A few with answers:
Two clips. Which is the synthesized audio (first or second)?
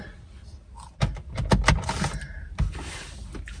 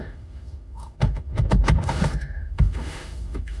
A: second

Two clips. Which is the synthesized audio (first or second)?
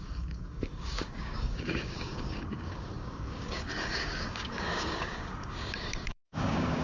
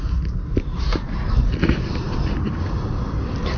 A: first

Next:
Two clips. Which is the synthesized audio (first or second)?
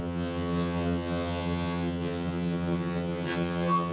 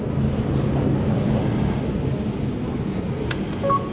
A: first